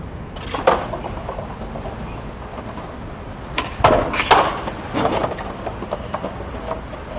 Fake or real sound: real